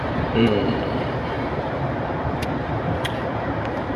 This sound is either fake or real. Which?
fake